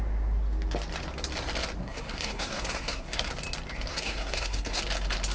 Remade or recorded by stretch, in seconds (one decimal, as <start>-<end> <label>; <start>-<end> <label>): 0.0-1.8 recorded; 1.8-3.3 remade; 3.3-3.9 recorded; 3.9-4.8 remade; 4.8-5.3 recorded